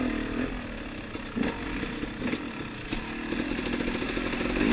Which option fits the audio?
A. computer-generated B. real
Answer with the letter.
B